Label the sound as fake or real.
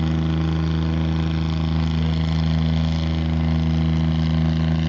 real